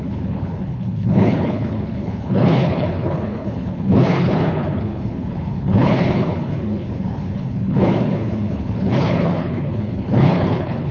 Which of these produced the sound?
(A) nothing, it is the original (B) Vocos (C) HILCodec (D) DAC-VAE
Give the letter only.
C